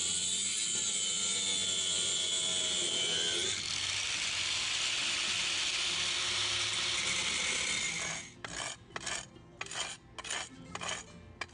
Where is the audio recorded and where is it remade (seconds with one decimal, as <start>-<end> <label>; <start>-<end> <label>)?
0.0-11.5 recorded